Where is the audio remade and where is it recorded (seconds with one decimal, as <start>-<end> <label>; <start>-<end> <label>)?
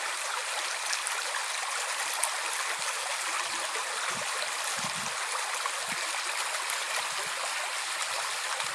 0.0-8.7 recorded